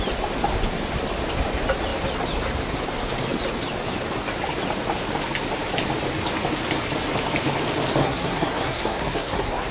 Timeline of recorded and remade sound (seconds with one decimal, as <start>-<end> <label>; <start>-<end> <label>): 0.0-8.0 recorded; 8.0-9.7 remade